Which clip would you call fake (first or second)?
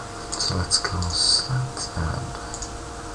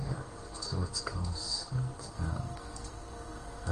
second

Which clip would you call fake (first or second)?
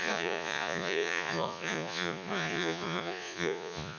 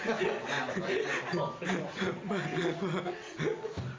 first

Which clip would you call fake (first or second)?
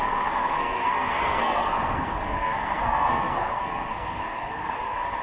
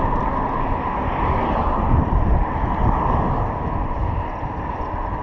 first